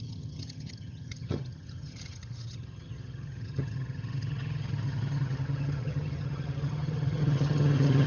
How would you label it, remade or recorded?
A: remade